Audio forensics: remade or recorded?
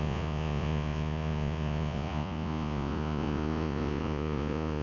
remade